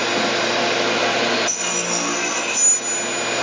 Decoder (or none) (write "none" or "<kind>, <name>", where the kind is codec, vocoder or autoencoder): none